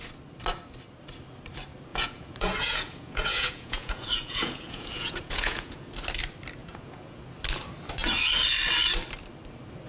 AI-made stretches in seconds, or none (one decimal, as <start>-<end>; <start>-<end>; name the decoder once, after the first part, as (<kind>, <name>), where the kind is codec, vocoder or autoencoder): 1.9-5.9 (vocoder, Vocos); 6.6-7.2